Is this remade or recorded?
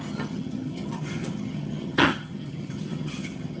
remade